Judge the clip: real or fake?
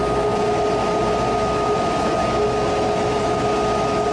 real